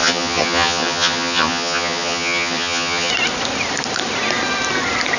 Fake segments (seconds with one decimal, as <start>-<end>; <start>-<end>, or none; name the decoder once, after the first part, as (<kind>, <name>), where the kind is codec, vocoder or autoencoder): 0.0-3.1 (vocoder, HiFi-GAN)